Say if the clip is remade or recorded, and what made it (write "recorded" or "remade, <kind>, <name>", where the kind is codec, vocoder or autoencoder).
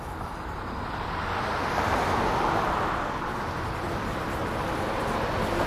recorded